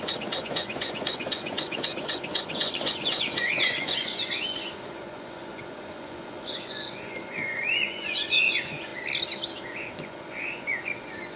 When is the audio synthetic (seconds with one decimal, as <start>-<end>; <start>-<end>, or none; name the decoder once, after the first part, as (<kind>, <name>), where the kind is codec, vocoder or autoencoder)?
0.0-8.9 (vocoder, Vocos); 9.6-11.4

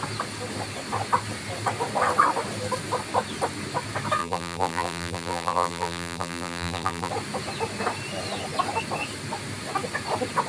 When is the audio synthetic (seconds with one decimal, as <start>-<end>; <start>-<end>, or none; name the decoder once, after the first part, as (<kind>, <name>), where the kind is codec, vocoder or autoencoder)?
4.2-7.1 (vocoder, BigVGAN v2)

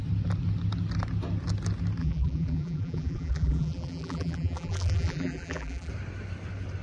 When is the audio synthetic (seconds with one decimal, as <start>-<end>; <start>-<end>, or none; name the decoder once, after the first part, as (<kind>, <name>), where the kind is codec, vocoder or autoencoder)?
2.0-5.9 (vocoder, BigVGAN v2)

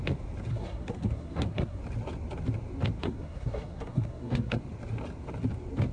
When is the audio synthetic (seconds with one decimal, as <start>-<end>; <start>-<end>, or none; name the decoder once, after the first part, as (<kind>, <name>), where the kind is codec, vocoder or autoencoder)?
0.5-1.8 (codec, SNAC); 3.0-4.6

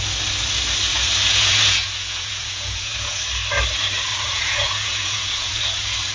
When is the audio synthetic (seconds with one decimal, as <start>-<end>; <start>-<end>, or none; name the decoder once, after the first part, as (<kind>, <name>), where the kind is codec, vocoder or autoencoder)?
0.9-3.2 (vocoder, Vocos); 4.1-5.6

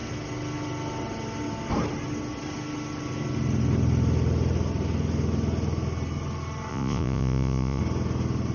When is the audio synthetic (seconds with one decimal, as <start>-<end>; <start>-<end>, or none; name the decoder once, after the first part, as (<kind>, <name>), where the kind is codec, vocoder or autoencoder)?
6.7-7.8 (vocoder, Vocos)

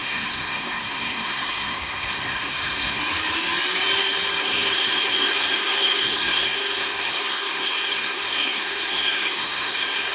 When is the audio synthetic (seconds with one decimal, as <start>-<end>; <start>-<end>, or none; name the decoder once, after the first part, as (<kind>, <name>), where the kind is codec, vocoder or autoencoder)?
0.0-3.0 (codec, SNAC); 4.4-10.1